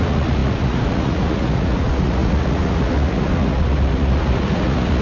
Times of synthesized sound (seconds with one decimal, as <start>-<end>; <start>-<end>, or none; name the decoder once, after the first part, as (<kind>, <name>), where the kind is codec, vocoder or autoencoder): 0.0-5.0 (vocoder, Vocos)